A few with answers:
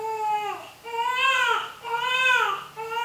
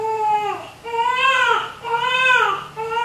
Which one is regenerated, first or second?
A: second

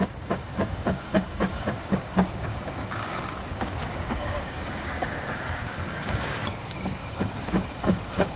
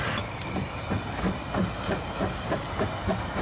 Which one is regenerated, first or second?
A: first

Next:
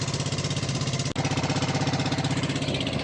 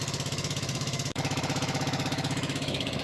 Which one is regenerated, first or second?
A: second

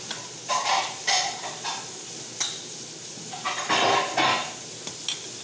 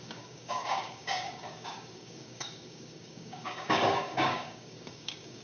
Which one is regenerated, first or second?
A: second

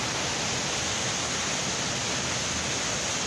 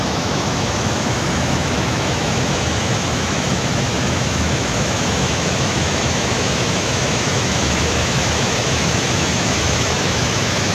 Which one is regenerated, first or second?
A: second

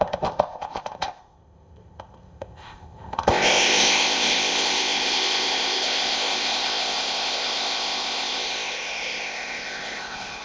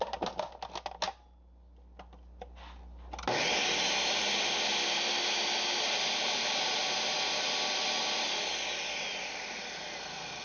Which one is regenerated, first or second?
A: first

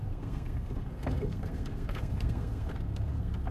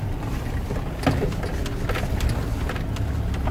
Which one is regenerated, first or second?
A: first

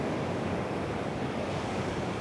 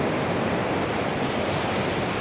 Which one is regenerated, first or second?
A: first